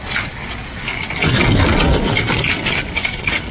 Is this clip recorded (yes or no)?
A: yes